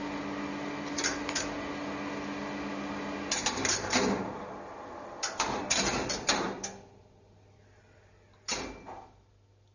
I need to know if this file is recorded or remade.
recorded